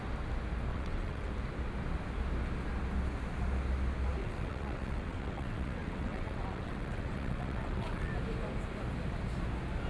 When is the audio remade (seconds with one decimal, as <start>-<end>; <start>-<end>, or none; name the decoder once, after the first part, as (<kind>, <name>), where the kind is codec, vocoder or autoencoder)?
0.7-1.3 (vocoder, WaveNeXt); 4.2-8.1